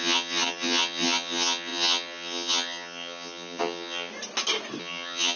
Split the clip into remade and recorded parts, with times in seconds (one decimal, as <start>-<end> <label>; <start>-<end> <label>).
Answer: 0.0-4.1 remade; 4.1-4.8 recorded; 4.8-5.4 remade